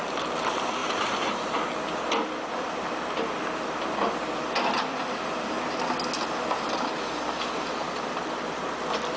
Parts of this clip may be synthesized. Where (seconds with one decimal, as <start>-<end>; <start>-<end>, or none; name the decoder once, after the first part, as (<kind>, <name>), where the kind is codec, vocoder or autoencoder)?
0.8-5.2 (vocoder, BigVGAN v2)